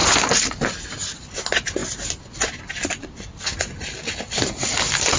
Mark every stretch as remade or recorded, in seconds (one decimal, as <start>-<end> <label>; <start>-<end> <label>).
0.0-5.2 recorded